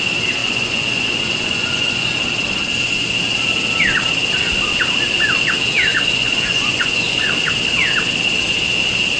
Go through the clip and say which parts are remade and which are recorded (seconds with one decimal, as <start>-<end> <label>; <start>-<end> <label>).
0.0-0.4 recorded; 0.4-2.1 remade; 2.1-5.9 recorded; 5.9-7.3 remade; 7.3-9.2 recorded